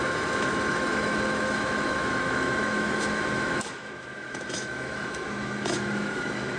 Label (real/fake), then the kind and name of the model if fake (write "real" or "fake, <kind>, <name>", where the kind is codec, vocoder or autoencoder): fake, autoencoder, DAC-VAE